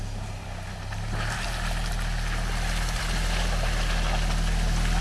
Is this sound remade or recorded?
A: recorded